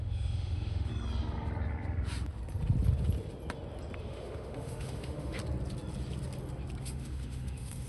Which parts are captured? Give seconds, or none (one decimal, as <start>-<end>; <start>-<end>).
0.9-4.0; 5.4-6.8